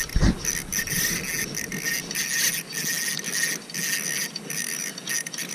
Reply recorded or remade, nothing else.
recorded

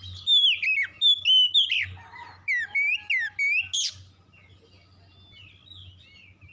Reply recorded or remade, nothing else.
recorded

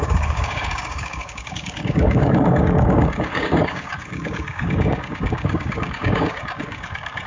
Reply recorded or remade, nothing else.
remade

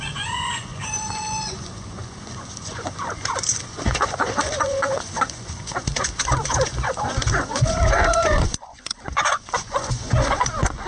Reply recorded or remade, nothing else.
remade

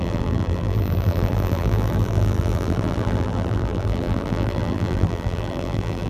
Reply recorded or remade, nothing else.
remade